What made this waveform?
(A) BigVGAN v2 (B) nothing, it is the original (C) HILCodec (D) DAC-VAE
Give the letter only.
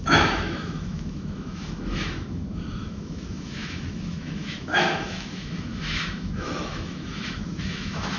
D